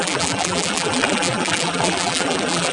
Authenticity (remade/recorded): remade